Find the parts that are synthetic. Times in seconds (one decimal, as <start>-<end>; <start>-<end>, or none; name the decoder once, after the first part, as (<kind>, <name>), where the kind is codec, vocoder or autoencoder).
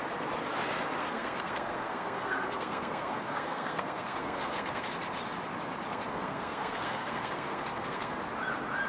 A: 1.0-4.9 (codec, SNAC); 5.9-8.1